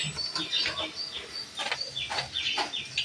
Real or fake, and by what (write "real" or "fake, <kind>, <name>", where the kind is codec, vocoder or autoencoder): real